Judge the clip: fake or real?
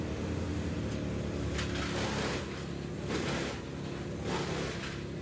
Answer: real